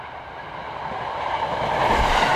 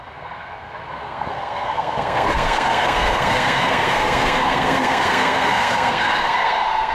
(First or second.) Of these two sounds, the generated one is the second